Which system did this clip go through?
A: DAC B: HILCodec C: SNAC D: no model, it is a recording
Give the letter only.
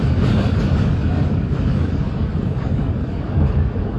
A